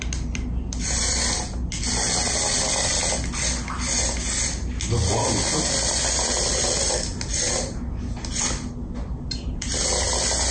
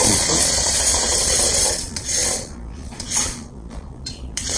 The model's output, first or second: second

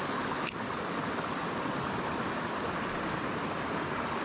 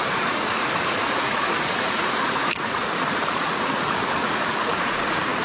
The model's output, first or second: second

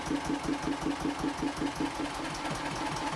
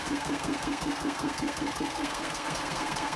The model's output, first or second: second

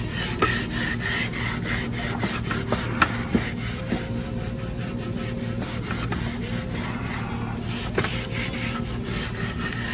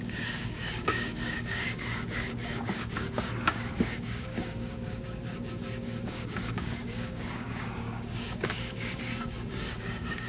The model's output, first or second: second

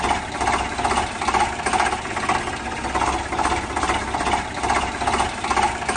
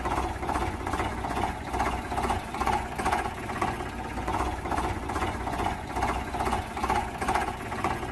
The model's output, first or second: second